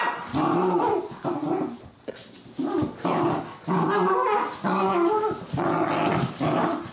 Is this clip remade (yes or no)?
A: no